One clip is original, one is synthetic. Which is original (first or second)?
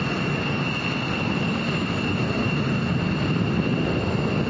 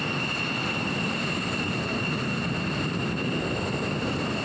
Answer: first